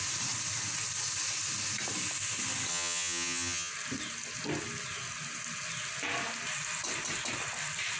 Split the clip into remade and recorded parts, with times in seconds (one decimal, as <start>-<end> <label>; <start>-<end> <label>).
0.0-2.7 recorded; 2.7-3.7 remade; 3.7-8.0 recorded